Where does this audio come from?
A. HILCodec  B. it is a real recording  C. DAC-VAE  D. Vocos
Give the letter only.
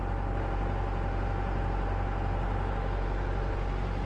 B